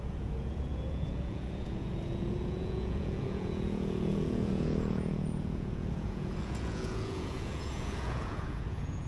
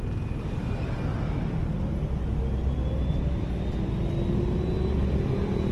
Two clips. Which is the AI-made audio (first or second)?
first